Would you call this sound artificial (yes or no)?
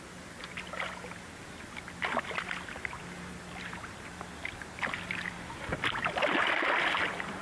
no